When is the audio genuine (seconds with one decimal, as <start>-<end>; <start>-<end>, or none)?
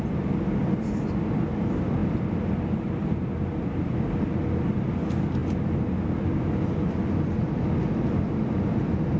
0.0-9.2